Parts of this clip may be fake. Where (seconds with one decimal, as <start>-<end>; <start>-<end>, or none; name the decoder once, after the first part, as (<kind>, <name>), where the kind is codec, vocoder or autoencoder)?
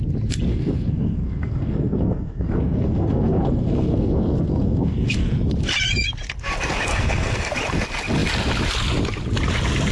0.5-5.2 (codec, SNAC); 6.9-7.5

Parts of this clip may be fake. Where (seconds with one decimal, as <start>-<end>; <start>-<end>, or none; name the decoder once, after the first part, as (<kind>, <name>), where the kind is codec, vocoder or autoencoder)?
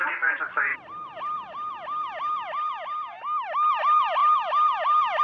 none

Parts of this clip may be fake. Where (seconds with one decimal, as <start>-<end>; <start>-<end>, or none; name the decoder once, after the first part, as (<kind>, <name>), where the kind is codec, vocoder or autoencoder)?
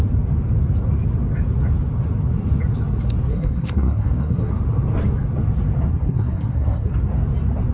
3.3-4.5 (codec, SNAC); 5.9-6.9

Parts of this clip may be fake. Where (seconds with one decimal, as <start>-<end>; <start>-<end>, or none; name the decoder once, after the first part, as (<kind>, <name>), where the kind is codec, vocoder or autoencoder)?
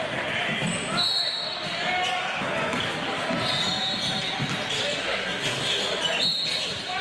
5.0-5.8 (codec, SNAC)